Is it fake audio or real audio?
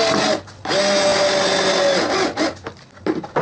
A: real